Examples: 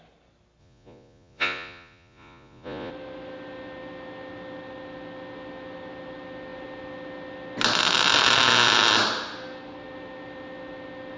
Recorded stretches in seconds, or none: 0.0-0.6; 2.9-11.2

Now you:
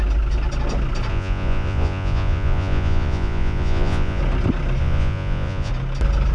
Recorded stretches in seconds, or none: 0.0-1.1; 4.2-4.8; 5.7-6.3

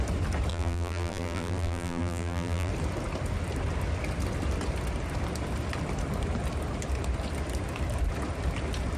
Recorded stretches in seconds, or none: 0.0-0.5; 2.7-9.0

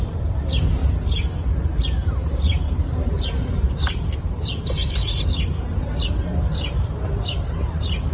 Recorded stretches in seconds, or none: 0.8-1.6; 4.8-5.7

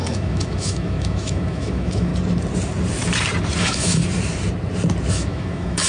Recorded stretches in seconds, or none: 2.1-3.6; 4.0-5.1

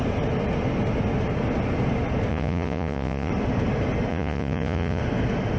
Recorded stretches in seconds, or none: 0.0-2.3; 3.3-4.1; 5.0-5.6

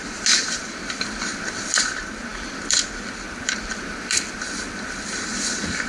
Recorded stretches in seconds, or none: 0.0-5.9